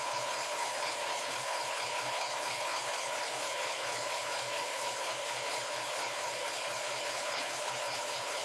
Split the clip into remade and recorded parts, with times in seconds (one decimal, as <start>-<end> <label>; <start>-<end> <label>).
0.0-8.4 remade

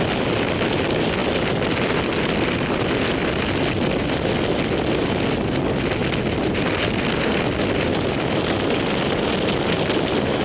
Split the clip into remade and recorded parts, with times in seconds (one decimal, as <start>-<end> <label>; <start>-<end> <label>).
0.0-10.4 recorded

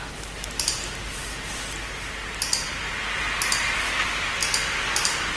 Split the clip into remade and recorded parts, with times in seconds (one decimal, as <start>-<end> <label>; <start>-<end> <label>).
0.0-5.4 recorded

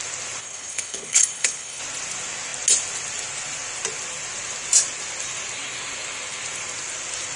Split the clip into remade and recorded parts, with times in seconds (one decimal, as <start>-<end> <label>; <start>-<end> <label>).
0.0-0.4 recorded; 0.4-1.8 remade; 1.8-7.4 recorded

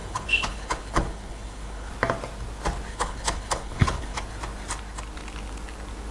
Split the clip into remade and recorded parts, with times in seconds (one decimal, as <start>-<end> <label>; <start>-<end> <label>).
0.0-1.9 remade; 1.9-2.9 recorded; 2.9-4.2 remade; 4.2-6.1 recorded

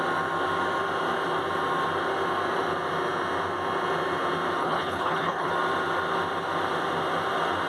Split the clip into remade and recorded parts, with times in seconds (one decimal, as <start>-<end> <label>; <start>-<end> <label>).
0.0-4.6 recorded; 4.6-5.5 remade; 5.5-7.7 recorded

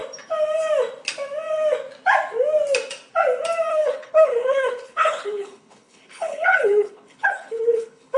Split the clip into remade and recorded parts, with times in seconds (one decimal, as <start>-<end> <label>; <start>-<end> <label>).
0.0-3.7 recorded; 3.7-8.2 remade

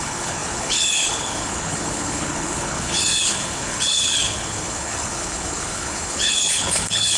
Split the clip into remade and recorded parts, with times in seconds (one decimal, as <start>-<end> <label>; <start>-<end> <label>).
0.0-7.2 remade